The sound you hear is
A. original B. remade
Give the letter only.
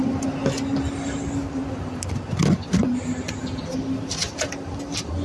A